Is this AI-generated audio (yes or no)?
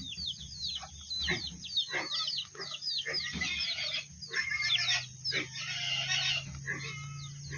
no